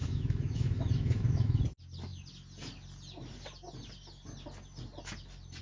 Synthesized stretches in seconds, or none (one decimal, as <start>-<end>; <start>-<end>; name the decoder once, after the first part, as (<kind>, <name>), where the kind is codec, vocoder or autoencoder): 0.0-1.6 (autoencoder, DAC-VAE)